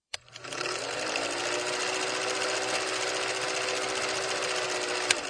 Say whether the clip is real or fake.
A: real